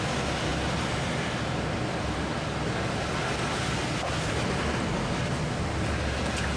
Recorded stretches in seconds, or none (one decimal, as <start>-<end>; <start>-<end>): 0.0-0.5; 2.0-6.6